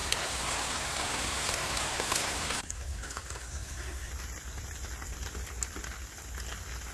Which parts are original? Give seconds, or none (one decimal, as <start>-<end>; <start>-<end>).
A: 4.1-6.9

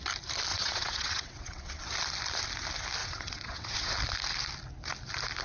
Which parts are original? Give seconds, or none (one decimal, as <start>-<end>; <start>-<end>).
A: 0.0-0.5; 1.8-3.0; 3.9-5.4

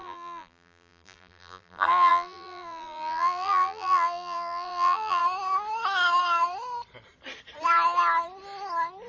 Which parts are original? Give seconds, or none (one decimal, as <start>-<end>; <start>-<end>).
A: 5.2-9.1

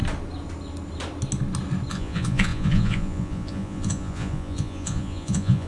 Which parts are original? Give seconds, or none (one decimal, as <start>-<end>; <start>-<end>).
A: 0.0-1.9

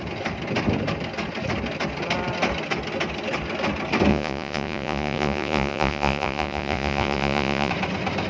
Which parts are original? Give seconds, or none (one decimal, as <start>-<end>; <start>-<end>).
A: 0.0-4.1; 7.7-8.3